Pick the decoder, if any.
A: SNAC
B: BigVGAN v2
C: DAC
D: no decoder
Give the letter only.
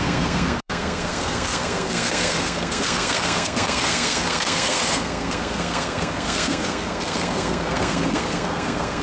A